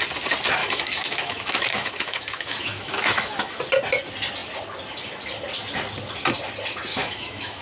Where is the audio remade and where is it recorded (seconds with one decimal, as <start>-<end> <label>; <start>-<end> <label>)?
0.0-0.6 recorded; 0.6-3.6 remade; 3.6-6.9 recorded; 6.9-7.6 remade